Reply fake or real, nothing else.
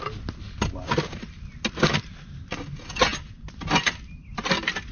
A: real